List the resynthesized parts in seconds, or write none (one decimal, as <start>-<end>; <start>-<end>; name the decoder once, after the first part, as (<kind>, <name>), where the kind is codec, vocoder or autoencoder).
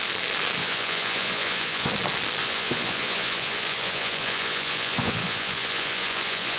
0.6-1.9 (vocoder, Vocos); 2.4-6.6